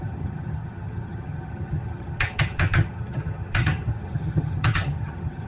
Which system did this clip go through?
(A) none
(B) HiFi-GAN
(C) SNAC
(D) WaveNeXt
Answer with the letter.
B